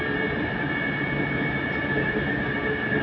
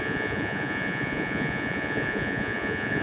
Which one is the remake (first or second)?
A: second